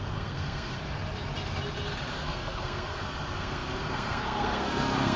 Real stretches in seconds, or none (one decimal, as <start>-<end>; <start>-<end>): 0.8-2.1